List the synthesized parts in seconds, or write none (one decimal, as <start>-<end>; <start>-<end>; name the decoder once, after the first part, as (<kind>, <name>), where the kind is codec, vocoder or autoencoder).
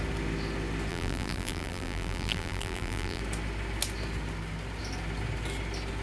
0.9-3.2 (vocoder, BigVGAN v2)